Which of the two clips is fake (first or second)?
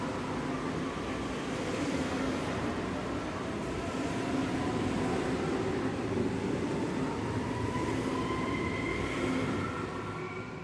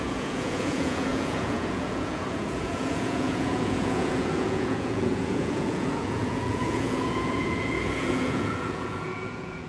second